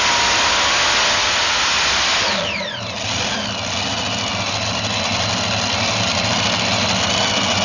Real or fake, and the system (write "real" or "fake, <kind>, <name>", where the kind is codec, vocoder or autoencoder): real